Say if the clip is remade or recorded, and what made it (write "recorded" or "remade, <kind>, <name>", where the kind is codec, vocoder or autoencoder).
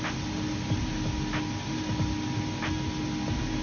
recorded